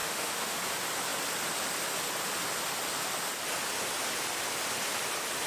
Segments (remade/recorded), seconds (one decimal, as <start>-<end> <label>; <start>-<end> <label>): 0.0-0.6 remade; 0.6-5.5 recorded

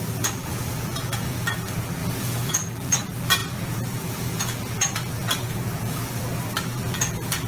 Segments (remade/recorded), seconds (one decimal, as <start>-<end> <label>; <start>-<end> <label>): 0.0-7.5 remade

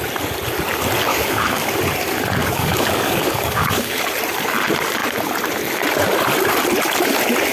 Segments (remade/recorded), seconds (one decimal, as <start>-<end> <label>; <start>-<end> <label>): 0.0-1.1 recorded; 1.1-1.7 remade; 1.7-2.4 recorded; 2.4-4.0 remade; 4.0-7.5 recorded

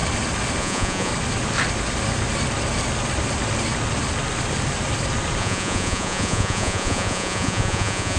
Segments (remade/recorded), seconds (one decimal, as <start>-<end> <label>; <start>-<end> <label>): 0.0-0.6 recorded; 0.6-1.1 remade; 1.1-5.4 recorded; 5.4-8.2 remade